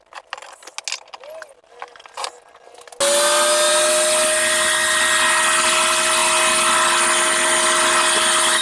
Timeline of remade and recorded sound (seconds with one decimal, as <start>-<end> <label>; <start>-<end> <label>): 0.0-8.6 recorded